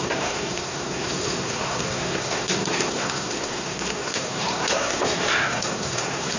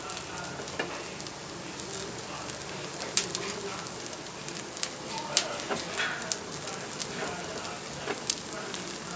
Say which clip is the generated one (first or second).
first